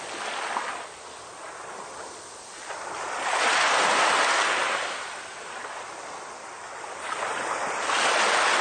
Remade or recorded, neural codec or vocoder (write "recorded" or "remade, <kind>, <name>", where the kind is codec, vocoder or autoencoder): recorded